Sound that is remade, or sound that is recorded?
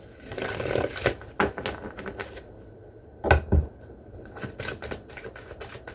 recorded